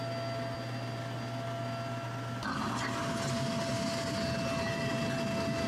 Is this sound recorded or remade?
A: recorded